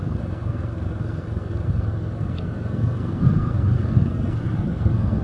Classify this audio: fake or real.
fake